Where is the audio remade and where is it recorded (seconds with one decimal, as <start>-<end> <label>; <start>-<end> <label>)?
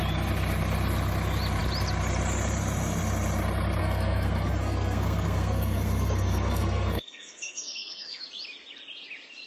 0.0-3.8 recorded; 3.8-8.2 remade; 8.2-9.5 recorded